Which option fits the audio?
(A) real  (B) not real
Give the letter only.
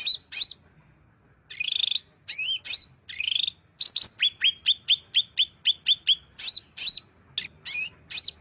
A